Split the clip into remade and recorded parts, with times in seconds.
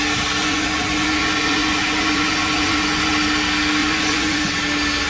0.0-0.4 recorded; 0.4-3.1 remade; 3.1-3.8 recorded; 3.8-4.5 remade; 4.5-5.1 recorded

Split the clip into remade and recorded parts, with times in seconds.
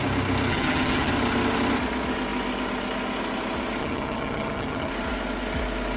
0.0-0.5 recorded; 0.5-1.1 remade; 1.1-3.8 recorded; 3.8-4.9 remade; 4.9-6.0 recorded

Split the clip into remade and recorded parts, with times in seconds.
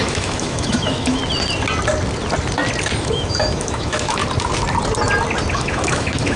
0.0-1.2 remade; 1.2-3.0 recorded; 3.0-4.2 remade; 4.2-5.5 recorded; 5.5-6.4 remade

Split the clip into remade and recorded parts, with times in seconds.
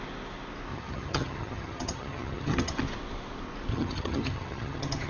0.0-0.7 recorded; 0.7-2.8 remade; 2.8-3.7 recorded; 3.7-5.1 remade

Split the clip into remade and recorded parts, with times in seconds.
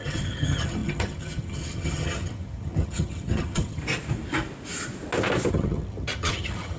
0.0-3.8 remade; 3.8-5.5 recorded; 5.5-6.8 remade